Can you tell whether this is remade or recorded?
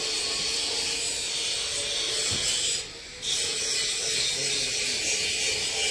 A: recorded